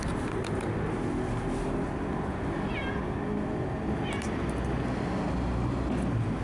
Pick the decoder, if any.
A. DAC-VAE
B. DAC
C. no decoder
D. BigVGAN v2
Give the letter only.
C